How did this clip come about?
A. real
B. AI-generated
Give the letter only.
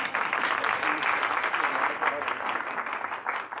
A